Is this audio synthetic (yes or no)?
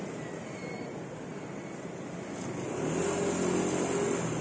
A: no